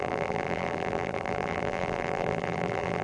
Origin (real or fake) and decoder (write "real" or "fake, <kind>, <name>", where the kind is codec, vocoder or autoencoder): fake, vocoder, BigVGAN v2